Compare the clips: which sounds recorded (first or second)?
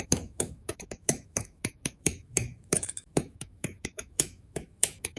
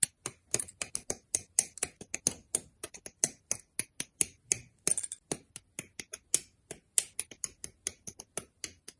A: second